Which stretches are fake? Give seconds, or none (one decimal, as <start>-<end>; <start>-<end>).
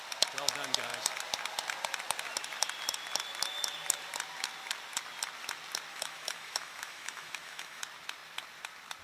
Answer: 5.9-7.8